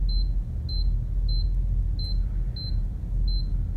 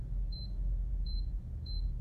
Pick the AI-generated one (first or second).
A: second